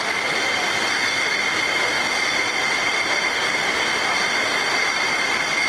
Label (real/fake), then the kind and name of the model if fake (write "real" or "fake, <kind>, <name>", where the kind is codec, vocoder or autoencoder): real